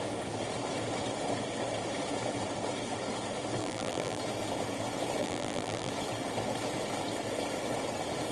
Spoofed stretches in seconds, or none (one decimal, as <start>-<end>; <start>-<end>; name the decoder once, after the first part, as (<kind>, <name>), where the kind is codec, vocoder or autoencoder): 3.6-4.2 (vocoder, BigVGAN v2); 5.2-5.9